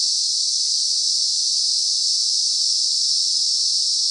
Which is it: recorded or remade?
recorded